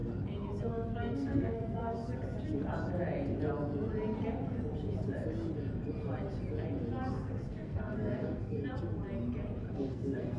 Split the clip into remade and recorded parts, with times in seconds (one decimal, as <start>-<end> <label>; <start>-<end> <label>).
0.0-0.6 recorded; 0.6-2.1 remade; 2.1-7.1 recorded; 7.1-8.6 remade; 8.6-9.7 recorded; 9.7-10.4 remade